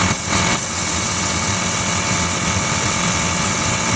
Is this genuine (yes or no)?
no